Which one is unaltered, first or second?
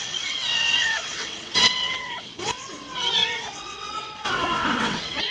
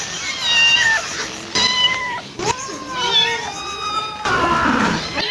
second